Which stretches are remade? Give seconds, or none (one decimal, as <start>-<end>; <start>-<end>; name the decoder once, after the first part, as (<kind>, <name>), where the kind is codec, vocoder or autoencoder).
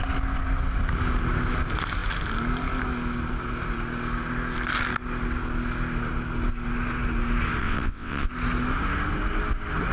7.6-8.3 (vocoder, WaveNeXt)